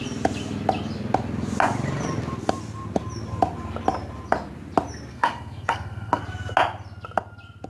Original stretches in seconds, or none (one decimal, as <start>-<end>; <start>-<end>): 0.0-5.1; 6.2-7.7